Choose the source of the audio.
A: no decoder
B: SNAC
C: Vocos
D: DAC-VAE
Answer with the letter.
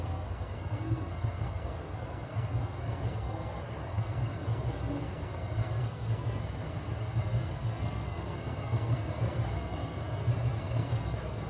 B